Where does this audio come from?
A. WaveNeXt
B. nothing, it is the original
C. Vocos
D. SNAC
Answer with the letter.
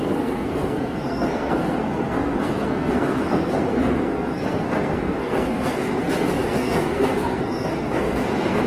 D